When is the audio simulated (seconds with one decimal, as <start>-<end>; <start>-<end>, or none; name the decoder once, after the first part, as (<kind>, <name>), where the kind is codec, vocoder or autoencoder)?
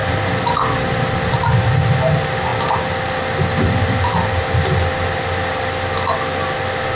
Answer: none